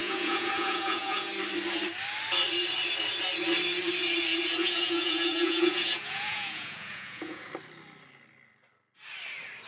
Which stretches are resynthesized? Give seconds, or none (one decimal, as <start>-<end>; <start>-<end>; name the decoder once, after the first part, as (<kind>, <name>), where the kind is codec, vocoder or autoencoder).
0.0-1.3 (vocoder, Vocos); 4.6-7.5